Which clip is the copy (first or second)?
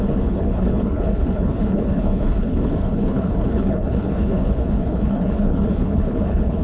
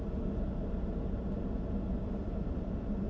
first